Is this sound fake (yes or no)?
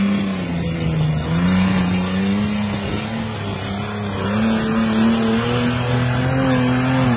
no